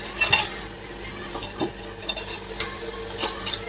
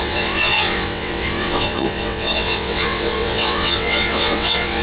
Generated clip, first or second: second